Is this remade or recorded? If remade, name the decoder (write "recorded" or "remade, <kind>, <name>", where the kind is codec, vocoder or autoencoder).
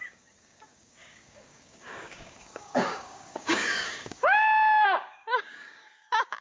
remade, codec, DAC